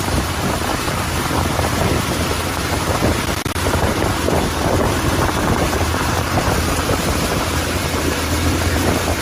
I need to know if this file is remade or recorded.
remade